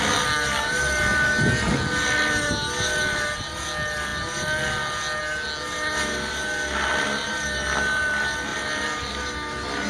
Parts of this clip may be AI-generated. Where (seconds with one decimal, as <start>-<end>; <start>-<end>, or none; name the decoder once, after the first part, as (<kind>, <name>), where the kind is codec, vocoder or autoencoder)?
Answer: 8.5-9.3 (vocoder, BigVGAN v2)